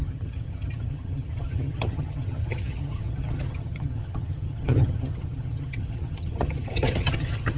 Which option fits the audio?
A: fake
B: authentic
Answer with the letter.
A